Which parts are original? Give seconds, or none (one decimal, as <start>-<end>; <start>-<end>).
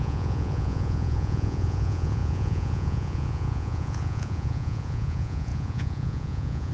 none